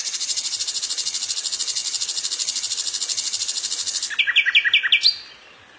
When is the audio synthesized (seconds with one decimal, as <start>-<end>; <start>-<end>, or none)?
0.0-0.8